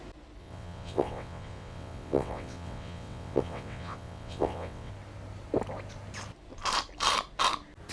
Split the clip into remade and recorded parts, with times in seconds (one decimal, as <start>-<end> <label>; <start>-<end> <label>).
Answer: 0.0-0.4 recorded; 0.4-4.9 remade; 4.9-7.9 recorded